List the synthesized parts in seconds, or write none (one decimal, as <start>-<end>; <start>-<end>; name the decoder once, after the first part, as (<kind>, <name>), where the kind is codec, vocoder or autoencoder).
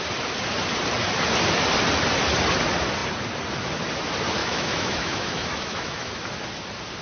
4.4-6.1 (autoencoder, DAC-VAE)